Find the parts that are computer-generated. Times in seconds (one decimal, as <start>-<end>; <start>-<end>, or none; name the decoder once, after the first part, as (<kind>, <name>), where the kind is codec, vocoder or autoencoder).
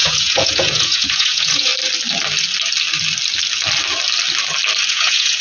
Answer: 0.0-1.7 (vocoder, Vocos); 4.9-5.4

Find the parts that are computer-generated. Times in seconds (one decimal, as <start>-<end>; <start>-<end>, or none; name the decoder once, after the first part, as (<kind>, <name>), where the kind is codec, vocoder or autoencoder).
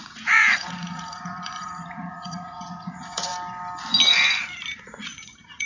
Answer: 0.0-3.3 (vocoder, Vocos); 4.8-5.7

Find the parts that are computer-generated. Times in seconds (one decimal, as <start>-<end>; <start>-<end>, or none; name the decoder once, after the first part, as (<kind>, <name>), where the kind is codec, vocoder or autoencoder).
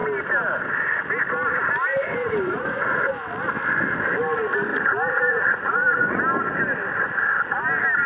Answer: 1.9-3.3 (vocoder, Vocos); 4.7-6.2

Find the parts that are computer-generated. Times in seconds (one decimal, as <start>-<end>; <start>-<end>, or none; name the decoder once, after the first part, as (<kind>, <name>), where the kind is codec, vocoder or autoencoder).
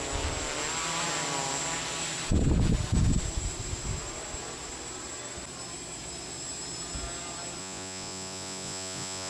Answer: 7.6-9.3 (vocoder, Vocos)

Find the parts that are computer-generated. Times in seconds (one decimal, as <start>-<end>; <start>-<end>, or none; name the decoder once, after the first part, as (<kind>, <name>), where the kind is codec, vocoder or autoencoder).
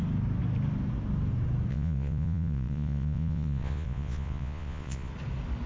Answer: 1.7-5.1 (vocoder, Vocos)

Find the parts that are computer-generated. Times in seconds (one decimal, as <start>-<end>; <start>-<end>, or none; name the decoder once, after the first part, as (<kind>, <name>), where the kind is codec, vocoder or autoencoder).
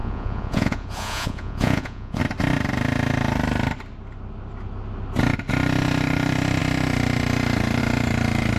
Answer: 0.0-2.2 (vocoder, Vocos)